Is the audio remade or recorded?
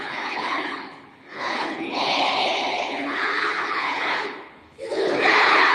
remade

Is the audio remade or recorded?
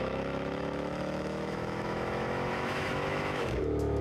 remade